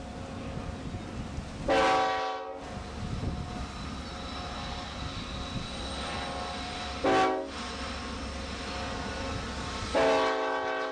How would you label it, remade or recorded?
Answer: recorded